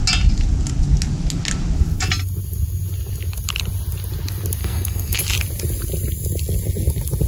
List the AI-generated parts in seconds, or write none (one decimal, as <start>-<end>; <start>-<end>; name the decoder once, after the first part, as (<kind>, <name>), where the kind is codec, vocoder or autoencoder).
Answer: 4.6-5.2 (codec, SNAC)